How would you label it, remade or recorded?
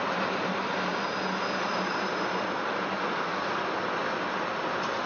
recorded